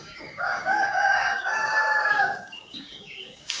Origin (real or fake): fake